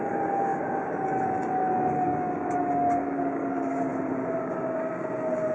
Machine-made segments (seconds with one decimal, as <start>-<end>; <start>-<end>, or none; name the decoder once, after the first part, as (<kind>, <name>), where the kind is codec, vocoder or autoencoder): 0.0-3.9 (codec, DAC); 4.4-5.5